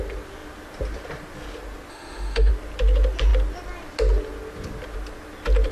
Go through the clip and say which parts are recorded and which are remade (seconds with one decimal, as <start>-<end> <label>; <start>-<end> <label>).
0.0-1.9 recorded; 1.9-2.5 remade; 2.5-5.7 recorded